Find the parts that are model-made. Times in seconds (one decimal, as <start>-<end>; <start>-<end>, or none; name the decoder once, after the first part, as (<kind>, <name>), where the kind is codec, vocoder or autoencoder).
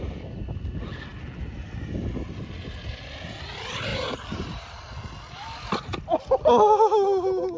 3.9-4.7 (vocoder, BigVGAN v2)